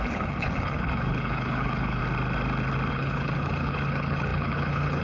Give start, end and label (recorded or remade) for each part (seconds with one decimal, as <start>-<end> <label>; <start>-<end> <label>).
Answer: 0.0-2.0 remade; 2.0-2.9 recorded; 2.9-5.0 remade